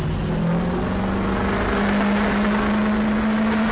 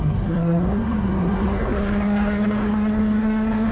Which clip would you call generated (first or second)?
second